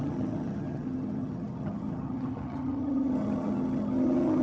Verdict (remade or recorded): remade